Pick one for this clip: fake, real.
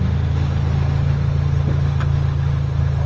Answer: real